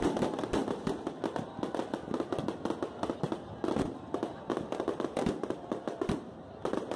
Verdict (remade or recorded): recorded